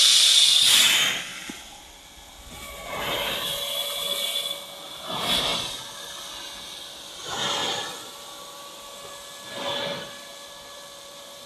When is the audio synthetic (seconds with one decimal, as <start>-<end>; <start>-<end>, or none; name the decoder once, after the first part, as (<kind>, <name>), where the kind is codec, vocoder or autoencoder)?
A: 0.0-1.3 (vocoder, BigVGAN v2); 5.0-5.5; 6.7-7.6; 10.1-11.5